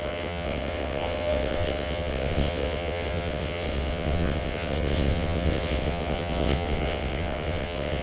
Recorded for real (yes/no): no